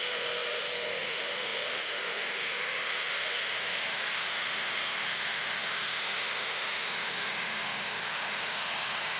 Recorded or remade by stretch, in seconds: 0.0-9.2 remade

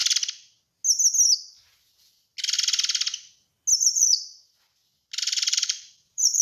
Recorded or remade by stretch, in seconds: 0.0-3.8 recorded; 3.8-4.2 remade; 4.2-5.5 recorded; 5.5-6.4 remade